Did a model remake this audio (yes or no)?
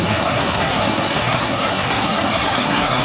yes